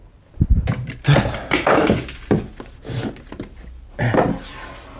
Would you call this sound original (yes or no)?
yes